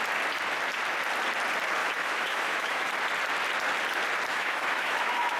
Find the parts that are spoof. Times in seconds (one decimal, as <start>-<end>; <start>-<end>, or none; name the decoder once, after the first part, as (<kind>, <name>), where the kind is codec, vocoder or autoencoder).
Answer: 1.8-2.9 (autoencoder, DAC-VAE); 4.3-5.4

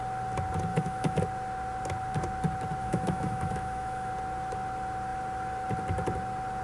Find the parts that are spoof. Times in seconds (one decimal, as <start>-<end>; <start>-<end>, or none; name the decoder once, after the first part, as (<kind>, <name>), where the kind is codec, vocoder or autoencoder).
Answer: 0.7-1.2 (autoencoder, DAC-VAE); 2.8-4.1

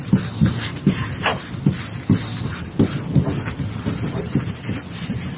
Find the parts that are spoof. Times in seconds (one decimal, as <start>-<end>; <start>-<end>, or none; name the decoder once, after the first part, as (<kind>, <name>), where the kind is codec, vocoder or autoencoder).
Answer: none

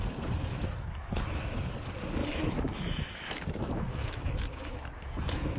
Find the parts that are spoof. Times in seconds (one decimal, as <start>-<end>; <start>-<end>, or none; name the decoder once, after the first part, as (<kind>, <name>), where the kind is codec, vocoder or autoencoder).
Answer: 0.5-1.7 (autoencoder, DAC-VAE); 2.2-5.6

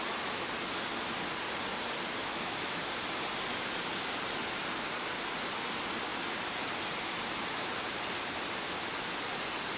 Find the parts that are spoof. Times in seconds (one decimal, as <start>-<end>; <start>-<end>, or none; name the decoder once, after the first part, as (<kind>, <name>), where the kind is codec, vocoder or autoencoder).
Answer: 2.2-2.8 (autoencoder, DAC-VAE)

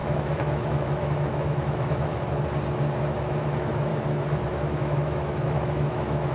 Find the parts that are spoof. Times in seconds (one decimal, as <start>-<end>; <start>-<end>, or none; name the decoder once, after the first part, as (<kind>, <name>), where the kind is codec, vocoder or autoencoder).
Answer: 0.0-2.1 (autoencoder, DAC-VAE); 3.2-3.9; 4.5-6.3

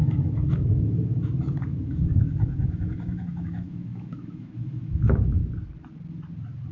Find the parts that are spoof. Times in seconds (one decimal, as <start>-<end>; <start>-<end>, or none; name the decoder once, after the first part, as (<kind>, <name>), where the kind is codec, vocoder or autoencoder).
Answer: 0.0-5.4 (autoencoder, DAC-VAE)

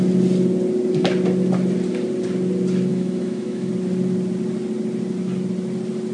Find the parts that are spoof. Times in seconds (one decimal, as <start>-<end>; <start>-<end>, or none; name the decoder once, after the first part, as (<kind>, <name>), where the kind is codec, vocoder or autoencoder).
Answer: 2.9-3.7 (autoencoder, DAC-VAE)